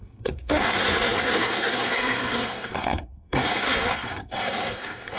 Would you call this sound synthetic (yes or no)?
yes